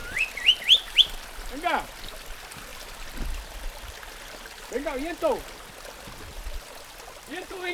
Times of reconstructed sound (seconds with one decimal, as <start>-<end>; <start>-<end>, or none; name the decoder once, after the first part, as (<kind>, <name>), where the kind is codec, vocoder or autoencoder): 2.7-4.6 (vocoder, BigVGAN v2)